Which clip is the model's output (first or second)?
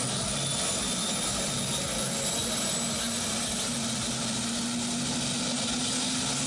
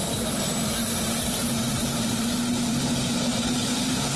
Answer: second